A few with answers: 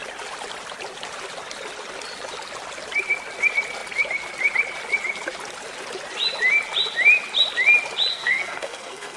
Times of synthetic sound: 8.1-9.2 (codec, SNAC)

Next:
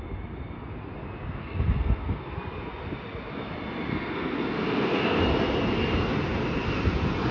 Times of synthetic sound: 1.4-2.3 (codec, SNAC); 3.9-5.2

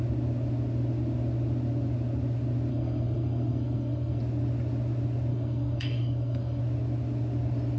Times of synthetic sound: 2.7-4.2 (codec, SNAC); 5.3-6.6

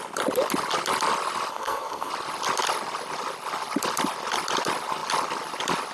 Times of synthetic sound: 1.5-2.1 (codec, SNAC)